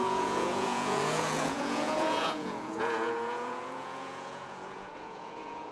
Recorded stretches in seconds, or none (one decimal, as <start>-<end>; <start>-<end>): none